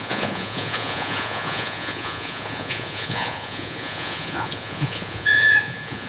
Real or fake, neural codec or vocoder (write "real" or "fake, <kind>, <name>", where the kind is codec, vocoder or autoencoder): fake, vocoder, Vocos